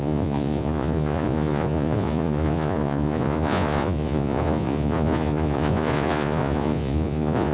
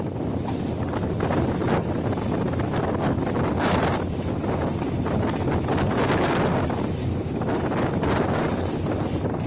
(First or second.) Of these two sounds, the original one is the second